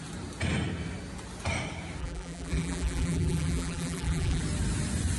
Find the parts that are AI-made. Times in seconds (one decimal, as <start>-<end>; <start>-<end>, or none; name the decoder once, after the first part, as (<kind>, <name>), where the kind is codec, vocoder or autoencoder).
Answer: 2.0-4.4 (vocoder, BigVGAN v2)